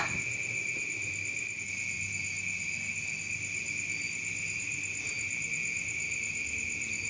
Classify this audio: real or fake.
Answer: real